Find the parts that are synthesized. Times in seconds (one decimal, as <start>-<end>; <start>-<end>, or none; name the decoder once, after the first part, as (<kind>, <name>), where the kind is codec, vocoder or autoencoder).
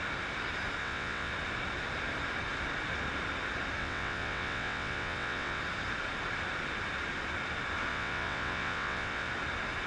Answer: 0.8-1.3 (vocoder, WaveNeXt); 3.8-5.6; 7.9-9.3